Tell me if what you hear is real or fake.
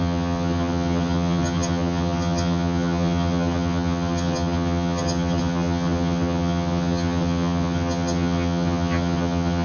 fake